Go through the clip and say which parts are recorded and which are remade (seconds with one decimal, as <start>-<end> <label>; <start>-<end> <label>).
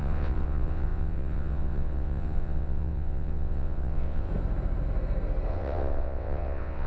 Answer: 0.0-4.3 remade; 4.3-5.5 recorded; 5.5-6.9 remade